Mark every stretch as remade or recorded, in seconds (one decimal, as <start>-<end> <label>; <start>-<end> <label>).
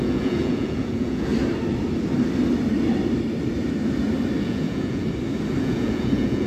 0.0-1.3 remade; 1.3-4.4 recorded; 4.4-5.0 remade; 5.0-5.6 recorded; 5.6-6.5 remade